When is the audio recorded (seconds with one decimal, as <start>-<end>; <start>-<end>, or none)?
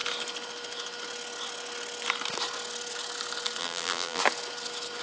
0.0-3.6; 4.2-5.0